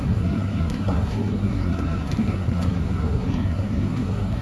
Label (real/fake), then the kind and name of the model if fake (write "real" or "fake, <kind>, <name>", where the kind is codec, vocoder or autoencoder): fake, codec, SNAC